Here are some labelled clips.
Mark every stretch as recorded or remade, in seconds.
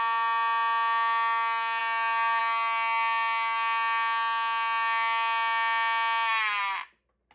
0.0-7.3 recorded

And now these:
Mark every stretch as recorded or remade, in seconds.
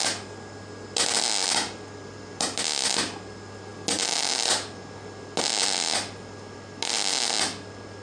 0.0-8.0 recorded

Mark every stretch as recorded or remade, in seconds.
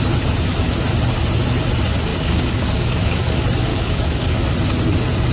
0.0-2.1 recorded; 2.1-3.2 remade; 3.2-3.7 recorded; 3.7-4.4 remade; 4.4-5.3 recorded